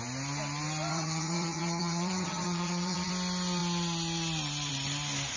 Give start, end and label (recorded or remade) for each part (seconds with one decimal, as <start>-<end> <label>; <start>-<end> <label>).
0.0-0.9 recorded; 0.9-3.1 remade; 3.1-5.4 recorded